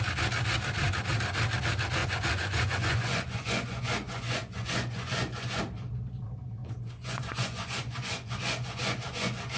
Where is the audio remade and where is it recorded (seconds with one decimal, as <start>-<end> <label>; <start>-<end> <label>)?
0.0-2.0 recorded; 2.0-5.6 remade; 5.6-6.6 recorded; 6.6-9.6 remade